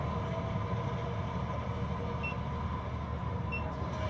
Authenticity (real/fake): real